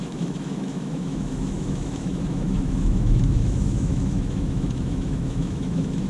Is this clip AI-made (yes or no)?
yes